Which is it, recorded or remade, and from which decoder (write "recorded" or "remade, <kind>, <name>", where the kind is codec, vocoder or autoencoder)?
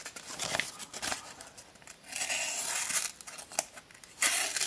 recorded